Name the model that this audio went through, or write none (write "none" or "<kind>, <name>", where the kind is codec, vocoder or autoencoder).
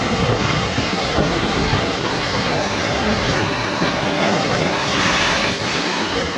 codec, SNAC